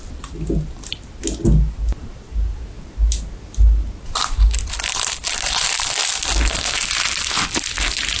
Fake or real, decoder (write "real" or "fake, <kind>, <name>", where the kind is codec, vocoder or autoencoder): real